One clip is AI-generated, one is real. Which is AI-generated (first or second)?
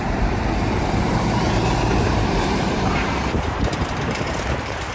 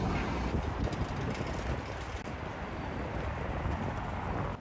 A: first